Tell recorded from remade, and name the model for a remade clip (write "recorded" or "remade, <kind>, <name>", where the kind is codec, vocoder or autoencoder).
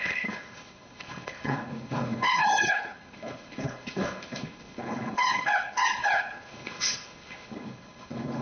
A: remade, codec, HILCodec